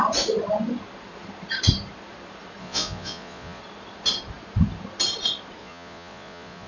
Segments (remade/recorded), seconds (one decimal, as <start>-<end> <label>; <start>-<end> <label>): 0.0-2.6 recorded; 2.6-3.6 remade; 3.6-5.6 recorded; 5.6-6.7 remade